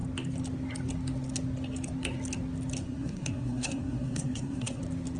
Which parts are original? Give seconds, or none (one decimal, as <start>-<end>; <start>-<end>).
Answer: 0.0-2.8; 4.8-5.2

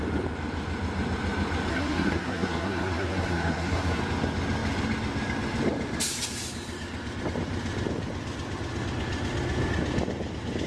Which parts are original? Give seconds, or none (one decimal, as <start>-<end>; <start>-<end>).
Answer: 0.0-1.7; 4.0-10.7